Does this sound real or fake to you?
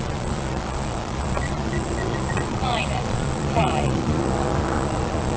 fake